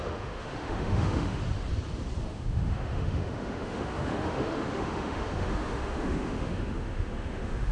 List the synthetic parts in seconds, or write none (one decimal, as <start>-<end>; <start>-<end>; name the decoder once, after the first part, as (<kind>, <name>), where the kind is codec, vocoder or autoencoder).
0.0-1.4 (autoencoder, DAC-VAE); 2.2-7.7